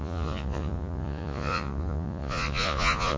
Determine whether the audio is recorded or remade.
remade